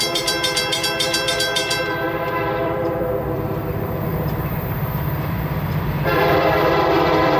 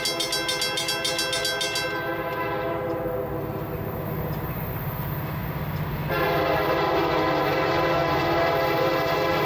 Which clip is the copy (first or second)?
first